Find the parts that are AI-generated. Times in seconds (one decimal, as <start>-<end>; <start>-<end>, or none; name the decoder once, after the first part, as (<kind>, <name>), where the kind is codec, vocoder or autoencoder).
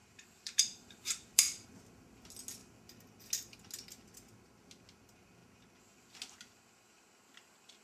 0.0-1.8 (vocoder, BigVGAN v2)